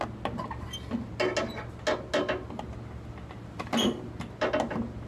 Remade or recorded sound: recorded